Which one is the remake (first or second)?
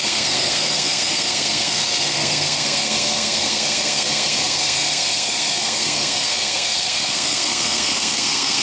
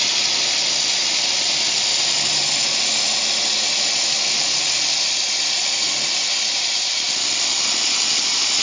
first